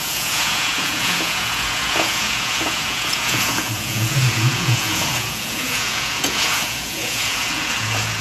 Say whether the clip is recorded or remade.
remade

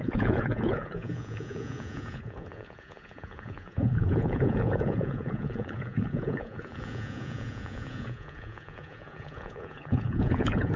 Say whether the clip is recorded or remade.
remade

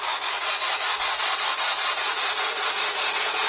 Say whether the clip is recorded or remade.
remade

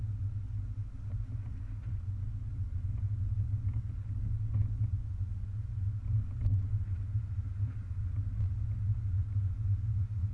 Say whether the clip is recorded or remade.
recorded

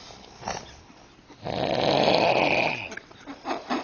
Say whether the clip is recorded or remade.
recorded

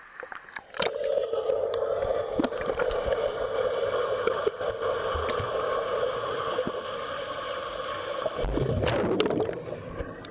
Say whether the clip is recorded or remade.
recorded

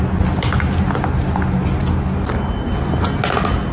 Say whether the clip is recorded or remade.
recorded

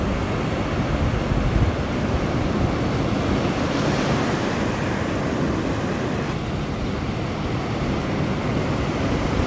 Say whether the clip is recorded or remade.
recorded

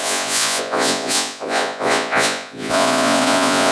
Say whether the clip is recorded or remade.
remade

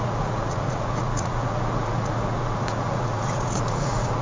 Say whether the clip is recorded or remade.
remade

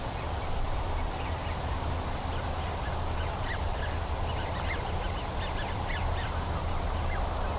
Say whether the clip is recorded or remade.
recorded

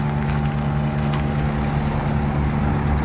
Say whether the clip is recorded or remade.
recorded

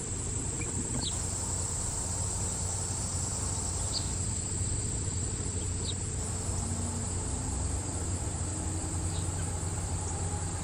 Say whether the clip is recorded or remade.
recorded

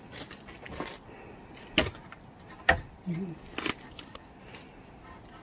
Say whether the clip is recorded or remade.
recorded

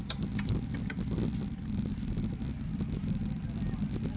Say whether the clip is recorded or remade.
recorded